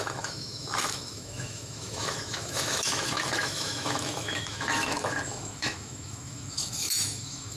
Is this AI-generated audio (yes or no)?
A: yes